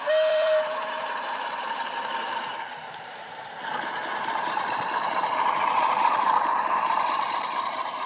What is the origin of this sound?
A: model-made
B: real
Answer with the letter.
A